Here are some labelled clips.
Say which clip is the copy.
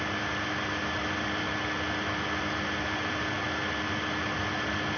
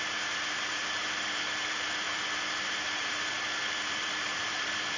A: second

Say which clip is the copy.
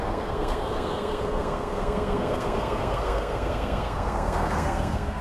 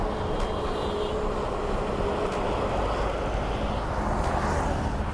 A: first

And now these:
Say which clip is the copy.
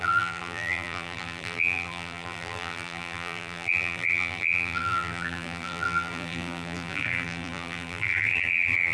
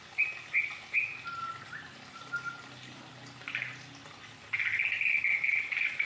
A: first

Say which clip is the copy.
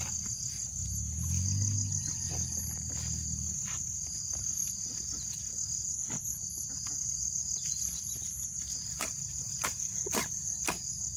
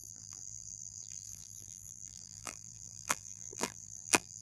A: second